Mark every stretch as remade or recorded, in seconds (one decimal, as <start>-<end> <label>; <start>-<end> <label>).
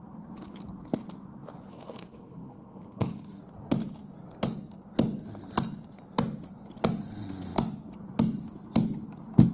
0.0-1.7 recorded; 1.7-3.4 remade; 3.4-9.5 recorded